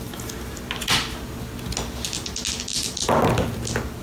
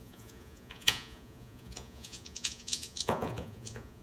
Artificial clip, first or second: second